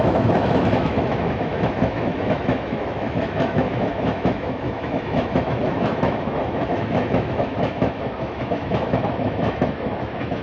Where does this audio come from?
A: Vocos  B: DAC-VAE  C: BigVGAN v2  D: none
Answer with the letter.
B